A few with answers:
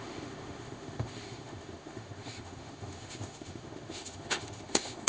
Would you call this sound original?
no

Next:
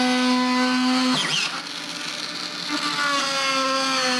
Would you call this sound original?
yes